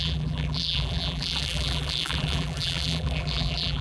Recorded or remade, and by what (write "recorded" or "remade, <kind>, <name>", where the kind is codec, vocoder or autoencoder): remade, vocoder, BigVGAN v2